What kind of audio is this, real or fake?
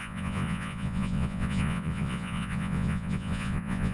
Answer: fake